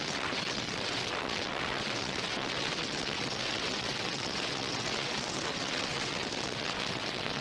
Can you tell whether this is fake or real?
fake